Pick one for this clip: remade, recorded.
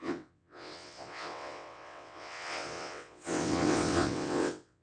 remade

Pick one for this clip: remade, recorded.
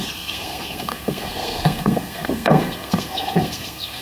remade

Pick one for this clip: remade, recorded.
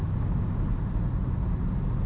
recorded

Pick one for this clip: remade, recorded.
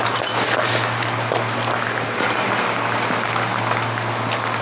recorded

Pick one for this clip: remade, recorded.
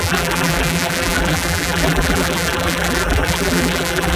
remade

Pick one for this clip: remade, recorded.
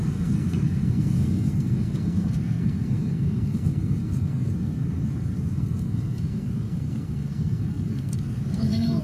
remade